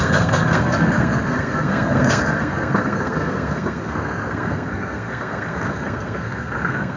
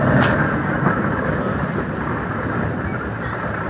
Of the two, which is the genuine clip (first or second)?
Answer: second